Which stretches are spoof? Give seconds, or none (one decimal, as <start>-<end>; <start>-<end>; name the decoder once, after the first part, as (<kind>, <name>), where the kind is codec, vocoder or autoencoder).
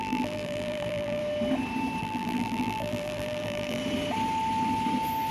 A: 0.0-1.2 (vocoder, BigVGAN v2); 2.0-3.8